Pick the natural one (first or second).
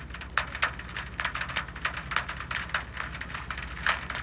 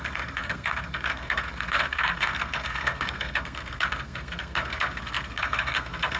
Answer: first